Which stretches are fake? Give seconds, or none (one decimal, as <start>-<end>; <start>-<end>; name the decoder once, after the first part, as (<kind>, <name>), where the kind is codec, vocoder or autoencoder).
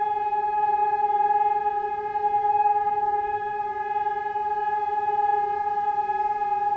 2.4-3.5 (autoencoder, DAC-VAE)